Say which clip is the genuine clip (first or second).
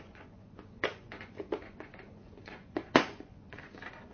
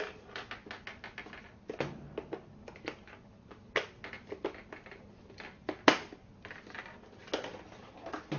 second